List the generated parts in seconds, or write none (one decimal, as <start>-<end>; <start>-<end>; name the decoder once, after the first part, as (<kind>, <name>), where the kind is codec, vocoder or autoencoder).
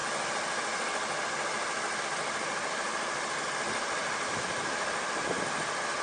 2.0-6.0 (vocoder, BigVGAN v2)